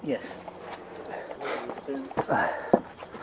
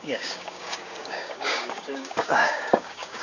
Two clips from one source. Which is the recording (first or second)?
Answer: first